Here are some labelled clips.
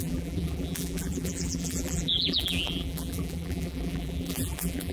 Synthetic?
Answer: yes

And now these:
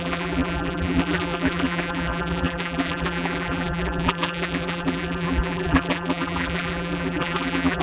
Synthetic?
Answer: yes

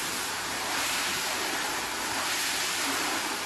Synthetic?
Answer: yes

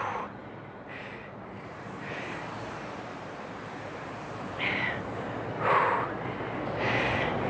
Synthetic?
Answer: yes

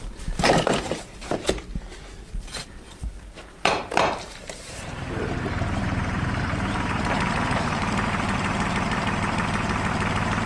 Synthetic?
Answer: yes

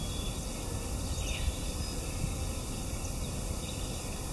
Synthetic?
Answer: no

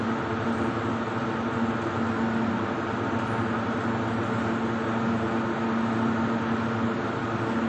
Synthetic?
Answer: no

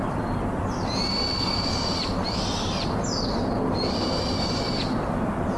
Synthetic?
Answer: yes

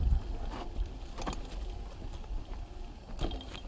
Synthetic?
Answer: no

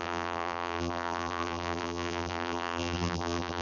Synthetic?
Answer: yes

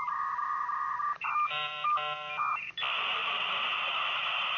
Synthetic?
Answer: yes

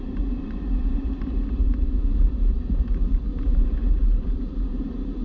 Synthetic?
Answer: yes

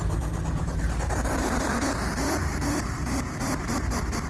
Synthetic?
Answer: yes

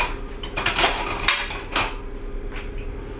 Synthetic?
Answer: no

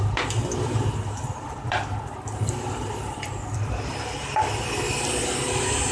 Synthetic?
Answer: yes